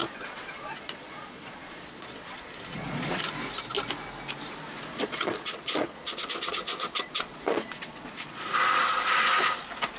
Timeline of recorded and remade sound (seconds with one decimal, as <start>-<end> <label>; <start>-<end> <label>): 0.0-3.3 remade; 3.3-4.9 recorded; 4.9-8.5 remade; 8.5-10.0 recorded